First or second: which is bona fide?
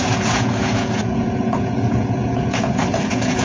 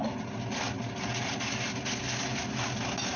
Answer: second